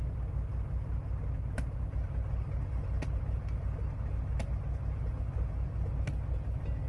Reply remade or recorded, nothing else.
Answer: recorded